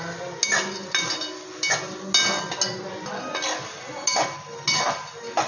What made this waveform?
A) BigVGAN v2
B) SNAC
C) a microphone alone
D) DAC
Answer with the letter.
C